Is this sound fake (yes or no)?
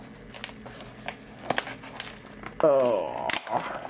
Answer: no